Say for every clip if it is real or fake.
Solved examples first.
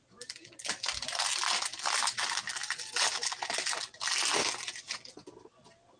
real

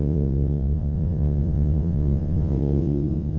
fake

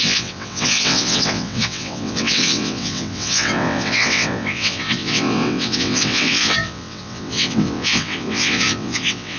fake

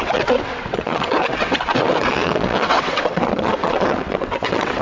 fake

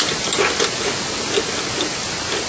real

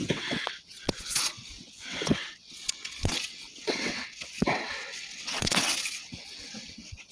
fake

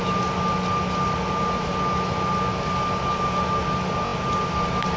real